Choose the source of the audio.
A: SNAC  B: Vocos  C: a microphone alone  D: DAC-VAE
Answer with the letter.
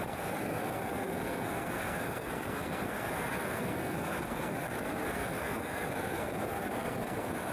A